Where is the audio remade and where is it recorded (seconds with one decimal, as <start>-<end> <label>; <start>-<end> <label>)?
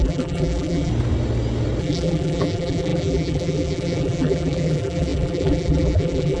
0.0-0.9 remade; 0.9-1.8 recorded; 1.8-6.4 remade